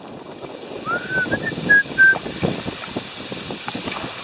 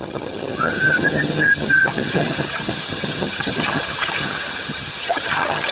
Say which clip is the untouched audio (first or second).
first